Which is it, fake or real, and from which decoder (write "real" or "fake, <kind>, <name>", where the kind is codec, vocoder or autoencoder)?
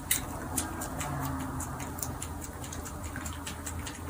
real